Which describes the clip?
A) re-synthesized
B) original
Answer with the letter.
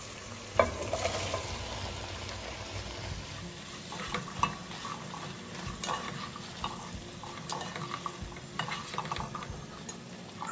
B